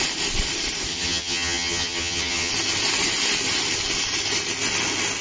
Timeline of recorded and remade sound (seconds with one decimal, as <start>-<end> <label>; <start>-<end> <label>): 0.0-0.9 recorded; 0.9-2.5 remade; 2.5-5.2 recorded